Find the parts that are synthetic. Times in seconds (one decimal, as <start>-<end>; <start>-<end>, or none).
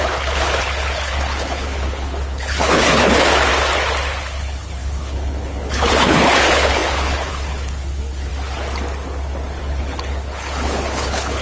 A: 0.0-3.5; 4.2-8.3; 9.6-11.4